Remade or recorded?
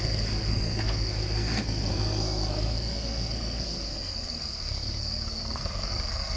remade